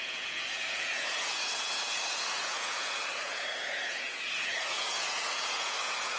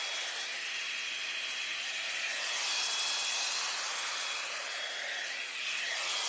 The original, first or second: second